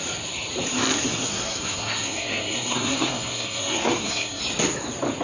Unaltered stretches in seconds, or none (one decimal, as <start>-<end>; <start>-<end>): 0.0-1.3; 4.4-5.2